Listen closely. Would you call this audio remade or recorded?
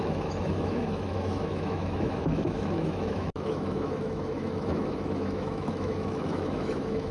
remade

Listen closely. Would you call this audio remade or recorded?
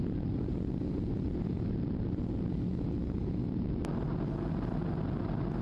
recorded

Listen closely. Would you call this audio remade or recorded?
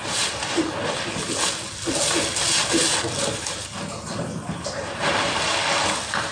recorded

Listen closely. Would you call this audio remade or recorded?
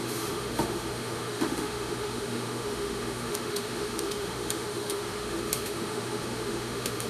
remade